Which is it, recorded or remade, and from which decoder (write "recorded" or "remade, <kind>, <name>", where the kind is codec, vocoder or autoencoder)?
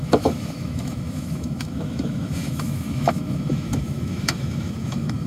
remade, autoencoder, DAC-VAE